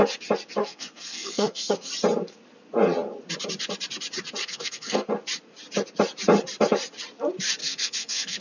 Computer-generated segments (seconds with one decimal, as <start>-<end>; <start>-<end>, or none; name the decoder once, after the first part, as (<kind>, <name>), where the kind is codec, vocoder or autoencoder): 0.6-1.9 (codec, SNAC); 4.4-5.1; 7.6-8.4